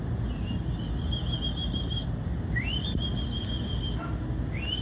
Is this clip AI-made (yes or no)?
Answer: no